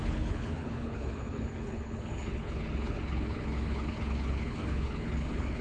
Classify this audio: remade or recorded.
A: remade